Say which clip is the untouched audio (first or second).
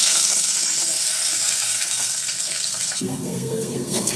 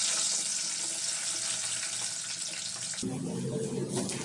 second